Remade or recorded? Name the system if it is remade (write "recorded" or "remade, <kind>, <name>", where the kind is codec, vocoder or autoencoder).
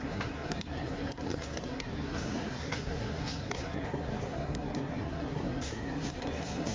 remade, codec, SNAC